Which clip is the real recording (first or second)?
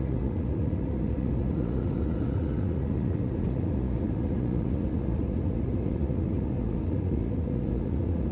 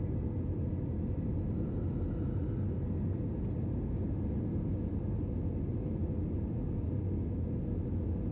second